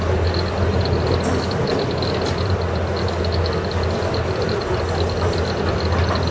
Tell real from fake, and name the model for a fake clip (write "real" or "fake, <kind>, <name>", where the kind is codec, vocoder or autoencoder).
real